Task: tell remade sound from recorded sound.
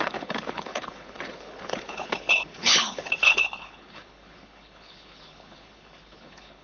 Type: remade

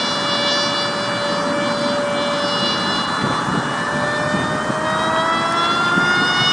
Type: recorded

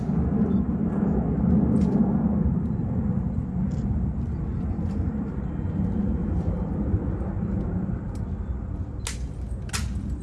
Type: recorded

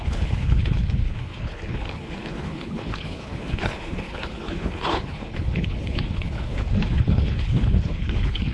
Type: remade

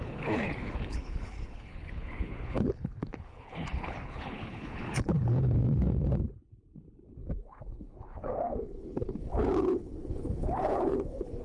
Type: remade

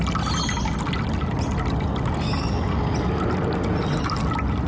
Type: recorded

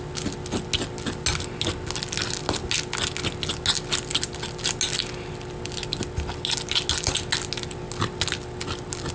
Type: recorded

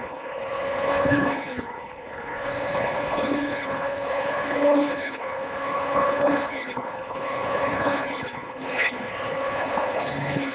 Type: remade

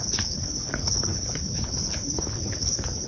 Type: remade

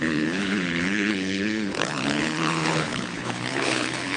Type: remade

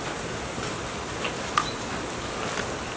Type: recorded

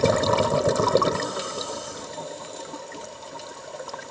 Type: recorded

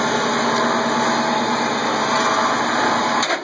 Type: recorded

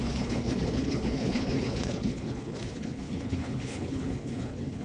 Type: remade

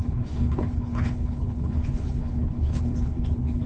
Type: remade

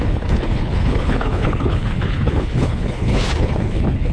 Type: remade